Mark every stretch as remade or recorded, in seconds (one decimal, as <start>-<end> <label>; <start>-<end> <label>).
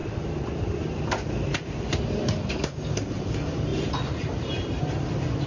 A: 0.0-3.2 remade; 3.2-3.7 recorded; 3.7-5.5 remade